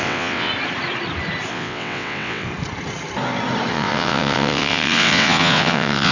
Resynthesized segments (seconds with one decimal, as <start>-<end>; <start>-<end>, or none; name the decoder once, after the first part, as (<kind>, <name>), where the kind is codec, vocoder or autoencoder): 0.0-0.5 (vocoder, WaveNeXt); 1.5-2.5; 3.7-6.1